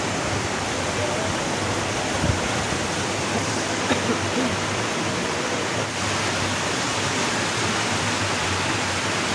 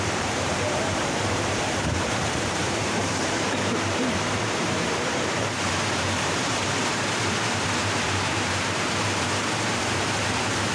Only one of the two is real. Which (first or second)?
first